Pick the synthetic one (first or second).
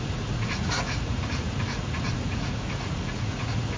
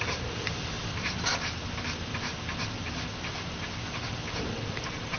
first